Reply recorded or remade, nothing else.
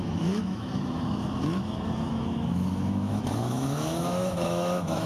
remade